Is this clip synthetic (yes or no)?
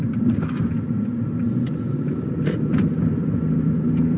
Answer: no